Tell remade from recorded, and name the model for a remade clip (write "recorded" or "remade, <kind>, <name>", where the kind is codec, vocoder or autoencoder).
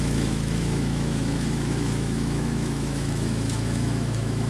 remade, autoencoder, DAC-VAE